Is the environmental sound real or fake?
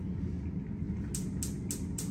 real